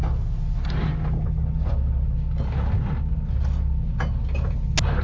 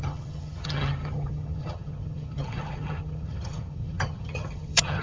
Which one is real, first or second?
first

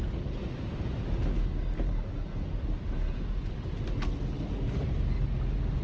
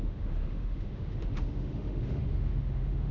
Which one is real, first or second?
first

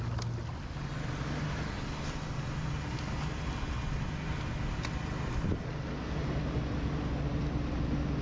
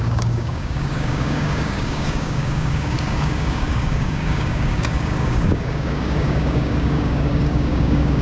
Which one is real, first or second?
first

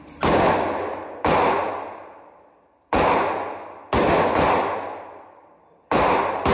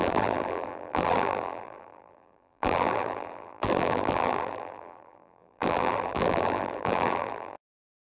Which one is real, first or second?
first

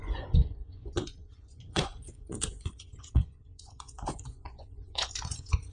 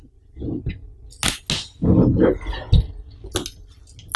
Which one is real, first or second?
second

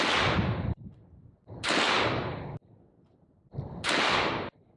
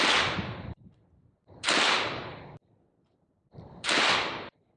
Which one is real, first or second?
first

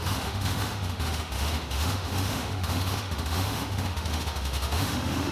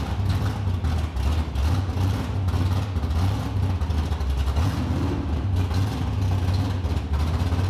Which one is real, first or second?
second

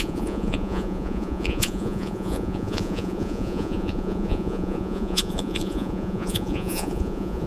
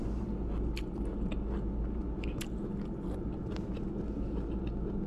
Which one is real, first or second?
second